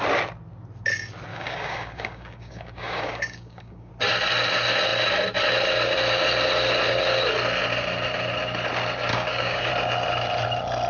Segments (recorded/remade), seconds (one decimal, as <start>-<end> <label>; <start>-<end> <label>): 0.0-1.3 recorded; 1.3-3.9 remade; 3.9-9.1 recorded; 9.1-9.7 remade; 9.7-10.9 recorded